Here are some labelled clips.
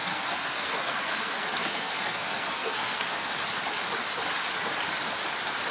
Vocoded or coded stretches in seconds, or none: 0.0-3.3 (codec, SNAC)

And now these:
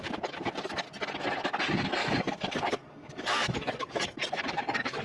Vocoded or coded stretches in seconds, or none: 2.0-5.0 (codec, DAC)

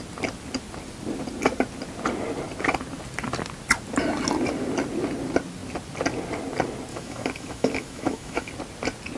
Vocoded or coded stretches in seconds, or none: 6.9-8.5 (autoencoder, DAC-VAE)

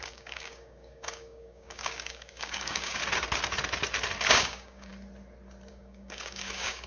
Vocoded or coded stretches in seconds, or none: 0.0-3.0 (codec, DAC); 4.3-4.9; 5.7-6.9

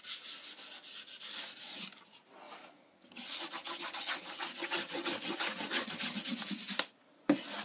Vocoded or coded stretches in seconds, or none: 2.9-6.4 (vocoder, HiFi-GAN)